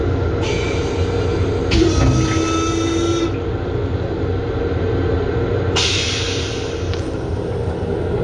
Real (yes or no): yes